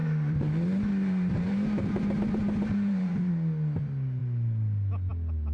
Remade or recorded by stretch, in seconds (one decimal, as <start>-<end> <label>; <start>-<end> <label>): 0.0-3.3 remade; 3.3-5.5 recorded